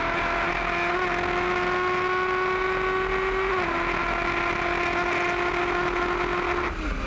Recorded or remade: recorded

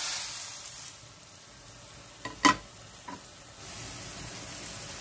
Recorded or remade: recorded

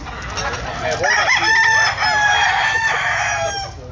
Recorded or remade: recorded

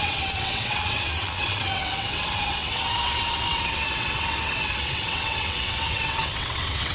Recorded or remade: remade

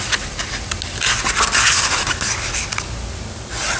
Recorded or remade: recorded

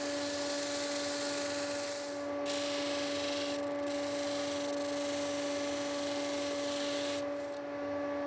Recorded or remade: recorded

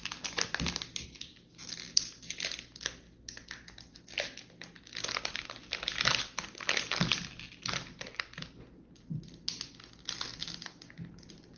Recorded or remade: recorded